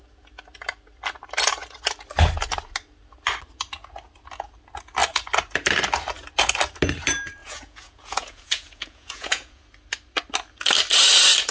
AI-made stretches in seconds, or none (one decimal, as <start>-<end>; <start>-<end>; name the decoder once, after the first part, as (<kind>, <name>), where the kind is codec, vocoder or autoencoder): 7.4-9.6 (vocoder, Vocos)